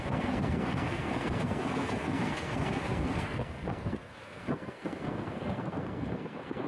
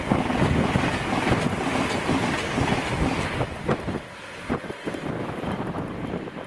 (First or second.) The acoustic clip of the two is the second